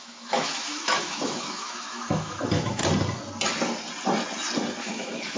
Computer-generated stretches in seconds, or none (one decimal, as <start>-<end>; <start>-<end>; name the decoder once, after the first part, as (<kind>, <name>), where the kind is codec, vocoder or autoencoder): 0.0-2.8 (autoencoder, DAC-VAE); 4.8-5.4